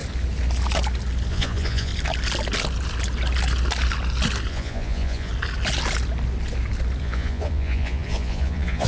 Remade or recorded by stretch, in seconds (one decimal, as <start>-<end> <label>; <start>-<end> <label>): 0.0-1.3 recorded; 1.3-1.9 remade; 1.9-4.5 recorded; 4.5-5.3 remade; 5.3-7.0 recorded; 7.0-8.9 remade

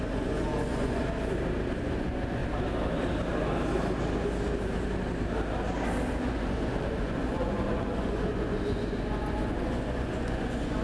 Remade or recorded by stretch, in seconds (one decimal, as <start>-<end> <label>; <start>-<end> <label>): 0.0-1.0 remade; 1.0-1.8 recorded; 1.8-2.4 remade; 2.4-6.2 recorded; 6.2-10.8 remade

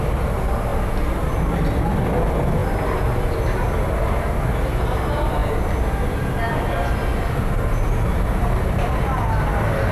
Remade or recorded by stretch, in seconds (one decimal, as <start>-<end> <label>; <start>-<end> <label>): 0.0-9.9 recorded

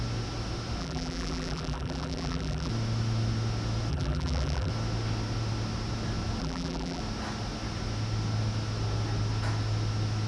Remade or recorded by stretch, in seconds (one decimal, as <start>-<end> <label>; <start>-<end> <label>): 0.0-0.8 recorded; 0.8-2.7 remade; 2.7-3.9 recorded; 3.9-4.7 remade; 4.7-6.4 recorded; 6.4-7.0 remade; 7.0-10.3 recorded

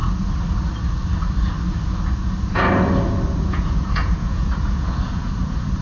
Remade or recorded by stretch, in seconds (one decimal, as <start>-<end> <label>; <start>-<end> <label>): 0.0-3.5 recorded; 3.5-5.8 remade